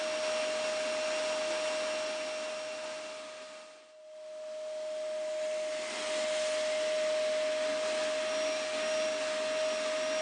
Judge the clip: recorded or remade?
recorded